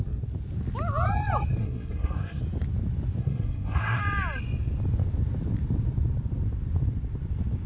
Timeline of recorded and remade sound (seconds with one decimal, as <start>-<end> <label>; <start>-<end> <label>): 0.0-1.6 recorded; 1.6-2.4 remade; 2.4-3.2 recorded; 3.2-4.0 remade; 4.0-7.7 recorded